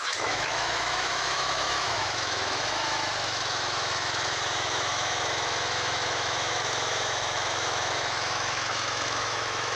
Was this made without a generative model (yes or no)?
no